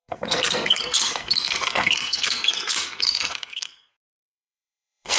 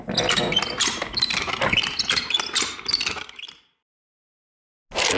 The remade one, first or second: first